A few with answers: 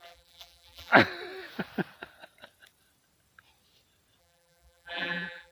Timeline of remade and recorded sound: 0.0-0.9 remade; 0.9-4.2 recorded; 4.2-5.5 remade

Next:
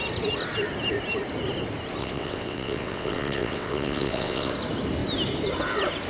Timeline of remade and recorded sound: 0.0-2.0 recorded; 2.0-4.5 remade; 4.5-6.1 recorded

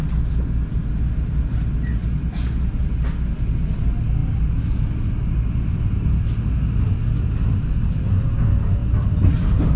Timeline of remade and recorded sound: 0.0-2.0 recorded; 2.0-2.9 remade; 2.9-4.2 recorded; 4.2-6.6 remade; 6.6-8.8 recorded; 8.8-9.3 remade; 9.3-9.8 recorded

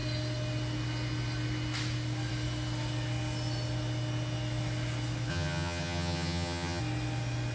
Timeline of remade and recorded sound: 0.0-5.3 recorded; 5.3-6.8 remade; 6.8-7.5 recorded

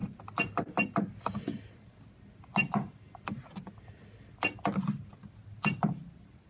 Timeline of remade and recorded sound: 0.0-6.5 recorded

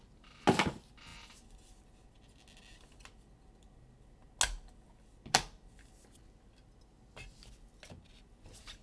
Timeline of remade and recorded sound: 0.0-8.8 recorded

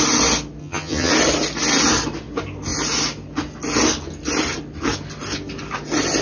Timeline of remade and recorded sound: 0.0-0.6 recorded; 0.6-1.1 remade; 1.1-6.2 recorded